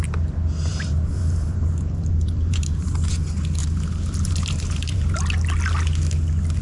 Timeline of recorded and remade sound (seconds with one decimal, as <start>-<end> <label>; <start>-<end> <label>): 0.0-0.7 recorded; 0.7-3.1 remade; 3.1-3.6 recorded; 3.6-5.2 remade; 5.2-6.6 recorded